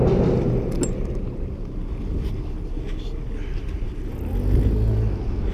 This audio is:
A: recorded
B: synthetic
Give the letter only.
A